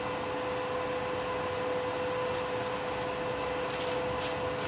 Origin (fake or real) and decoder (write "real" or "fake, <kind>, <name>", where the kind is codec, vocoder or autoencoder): real